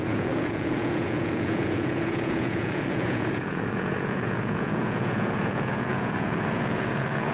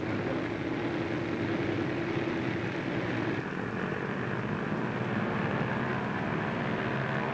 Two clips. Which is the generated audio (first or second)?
first